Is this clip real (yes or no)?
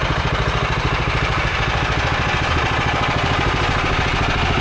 yes